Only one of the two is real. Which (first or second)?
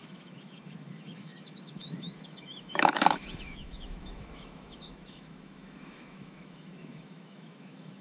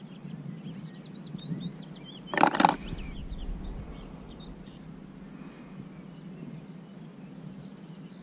second